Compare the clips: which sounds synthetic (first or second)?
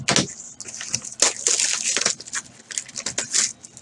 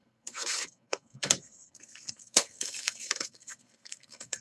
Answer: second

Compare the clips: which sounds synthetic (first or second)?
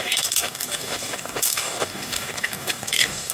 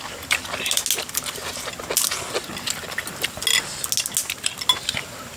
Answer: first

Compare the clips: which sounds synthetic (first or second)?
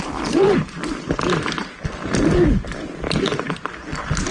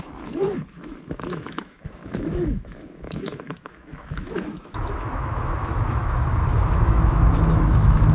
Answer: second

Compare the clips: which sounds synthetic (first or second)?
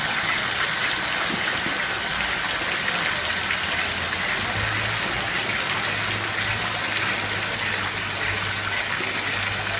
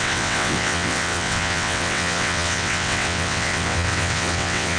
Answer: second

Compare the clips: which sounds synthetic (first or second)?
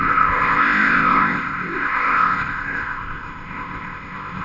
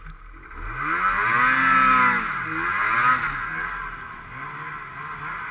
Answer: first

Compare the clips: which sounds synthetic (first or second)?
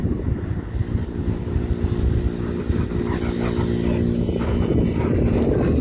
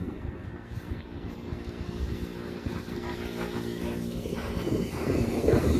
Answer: second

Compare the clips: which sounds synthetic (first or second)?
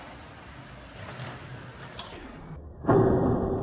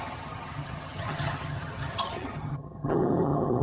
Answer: second